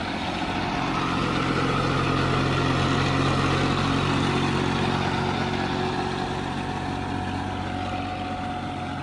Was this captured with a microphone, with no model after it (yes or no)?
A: yes